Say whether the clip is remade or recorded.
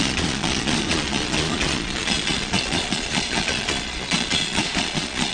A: remade